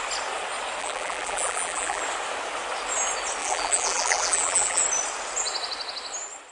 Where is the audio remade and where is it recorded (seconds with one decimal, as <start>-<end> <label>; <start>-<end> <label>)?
0.0-0.8 recorded; 0.8-2.0 remade; 2.0-3.4 recorded; 3.4-4.8 remade; 4.8-6.5 recorded